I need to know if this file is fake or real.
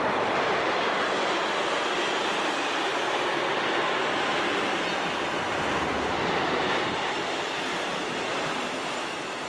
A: real